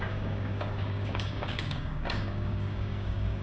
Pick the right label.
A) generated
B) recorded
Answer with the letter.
A